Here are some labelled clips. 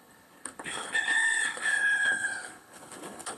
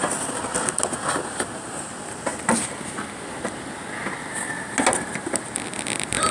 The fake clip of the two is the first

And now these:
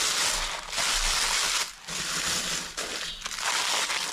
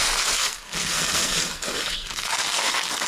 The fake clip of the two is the second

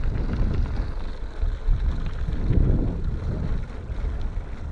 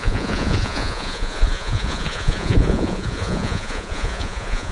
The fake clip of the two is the second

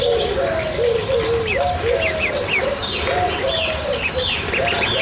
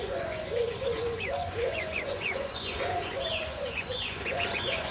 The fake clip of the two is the second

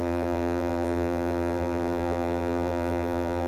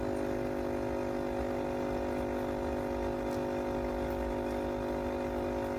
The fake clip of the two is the first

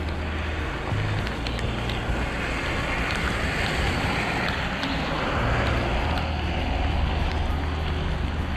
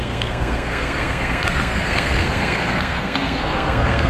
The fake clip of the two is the second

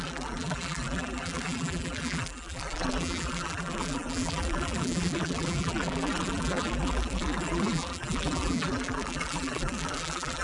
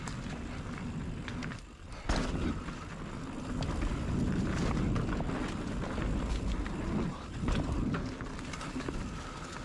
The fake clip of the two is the first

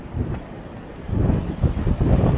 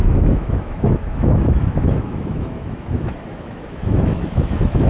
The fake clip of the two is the second